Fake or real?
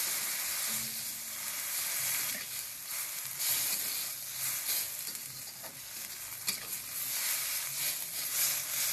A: real